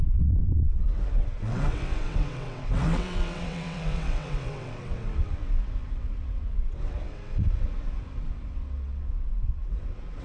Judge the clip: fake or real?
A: fake